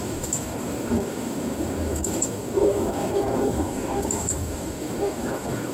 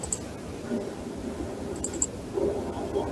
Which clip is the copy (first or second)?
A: first